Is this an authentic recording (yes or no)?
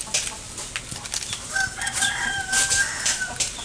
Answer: yes